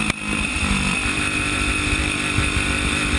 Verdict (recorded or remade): remade